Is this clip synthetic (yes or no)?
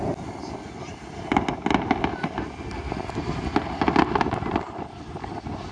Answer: no